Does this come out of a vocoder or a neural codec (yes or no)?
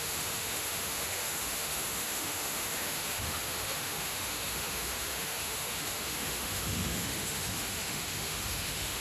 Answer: yes